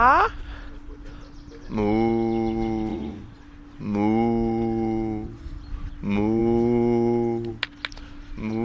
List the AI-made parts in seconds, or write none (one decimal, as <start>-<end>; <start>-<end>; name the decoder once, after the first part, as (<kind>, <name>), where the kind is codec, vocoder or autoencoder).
2.9-3.4 (vocoder, Vocos)

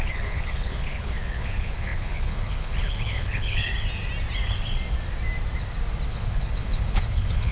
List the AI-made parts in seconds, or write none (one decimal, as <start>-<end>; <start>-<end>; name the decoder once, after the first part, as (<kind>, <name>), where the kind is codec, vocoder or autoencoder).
0.0-3.7 (codec, HILCodec); 6.1-7.5

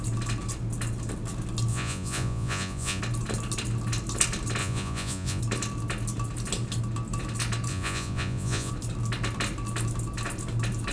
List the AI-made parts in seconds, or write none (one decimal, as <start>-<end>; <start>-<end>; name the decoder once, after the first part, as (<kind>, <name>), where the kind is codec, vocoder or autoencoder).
1.7-3.0 (vocoder, Vocos); 4.6-5.4; 7.7-8.7

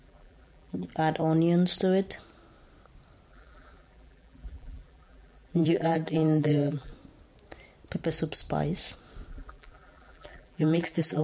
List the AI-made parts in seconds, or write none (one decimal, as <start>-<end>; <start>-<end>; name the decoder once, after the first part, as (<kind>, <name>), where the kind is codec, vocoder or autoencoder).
0.0-0.9 (vocoder, BigVGAN v2); 3.3-6.9; 9.3-11.2

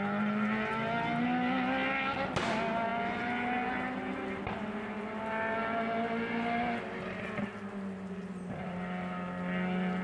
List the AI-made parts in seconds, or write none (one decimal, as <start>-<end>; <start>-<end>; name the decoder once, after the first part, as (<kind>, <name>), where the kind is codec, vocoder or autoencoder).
none

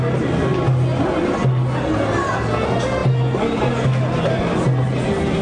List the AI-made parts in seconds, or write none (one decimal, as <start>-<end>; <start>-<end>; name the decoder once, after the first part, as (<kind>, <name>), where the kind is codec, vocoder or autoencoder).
none

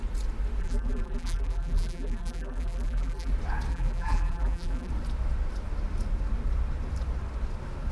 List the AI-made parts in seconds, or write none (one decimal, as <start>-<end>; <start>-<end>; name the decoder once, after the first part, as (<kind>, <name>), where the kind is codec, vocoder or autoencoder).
0.6-3.3 (vocoder, BigVGAN v2); 3.7-4.9

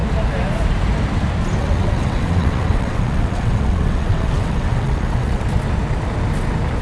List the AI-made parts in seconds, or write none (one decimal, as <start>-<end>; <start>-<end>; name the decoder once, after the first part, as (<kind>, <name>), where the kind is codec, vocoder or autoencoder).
1.6-5.4 (vocoder, WaveNeXt)